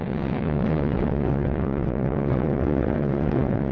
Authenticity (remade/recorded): remade